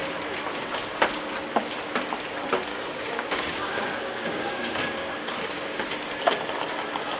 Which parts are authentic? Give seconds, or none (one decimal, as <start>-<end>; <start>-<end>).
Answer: 0.0-2.7; 5.8-7.2